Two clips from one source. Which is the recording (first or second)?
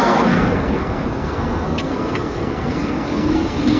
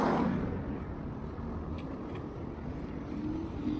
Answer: second